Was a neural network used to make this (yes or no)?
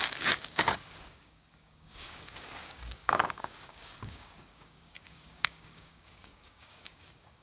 yes